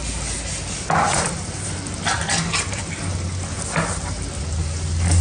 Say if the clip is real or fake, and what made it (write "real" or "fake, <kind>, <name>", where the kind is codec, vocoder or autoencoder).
real